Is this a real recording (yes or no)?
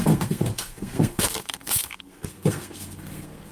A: no